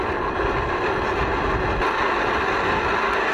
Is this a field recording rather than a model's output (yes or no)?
yes